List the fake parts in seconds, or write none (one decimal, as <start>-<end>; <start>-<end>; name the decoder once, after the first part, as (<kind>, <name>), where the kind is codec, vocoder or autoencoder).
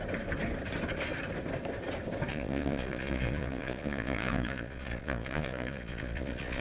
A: 2.3-6.6 (vocoder, Vocos)